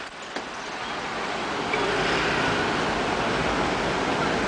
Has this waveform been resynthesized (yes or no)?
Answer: no